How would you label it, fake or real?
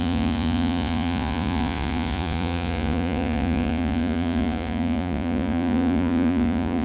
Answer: fake